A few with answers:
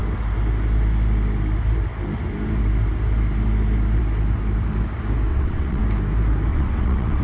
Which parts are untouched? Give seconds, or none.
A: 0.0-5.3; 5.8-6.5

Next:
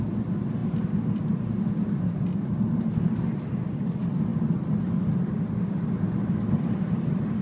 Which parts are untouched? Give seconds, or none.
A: 0.0-7.4